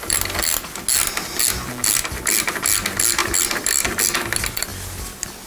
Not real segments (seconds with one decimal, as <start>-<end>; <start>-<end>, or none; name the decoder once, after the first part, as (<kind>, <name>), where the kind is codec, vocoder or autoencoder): none